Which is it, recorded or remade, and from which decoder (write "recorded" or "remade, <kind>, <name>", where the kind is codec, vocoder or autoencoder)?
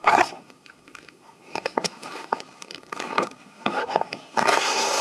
remade, codec, SNAC